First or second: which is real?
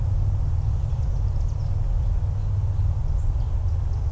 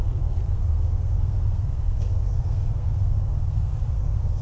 first